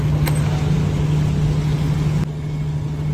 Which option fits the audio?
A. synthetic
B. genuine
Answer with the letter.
B